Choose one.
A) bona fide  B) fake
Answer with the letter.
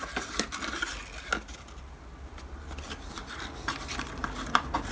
A